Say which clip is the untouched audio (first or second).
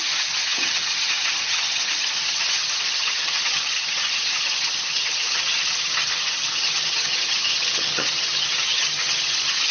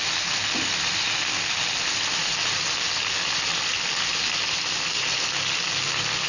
second